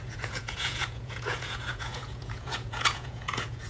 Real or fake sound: fake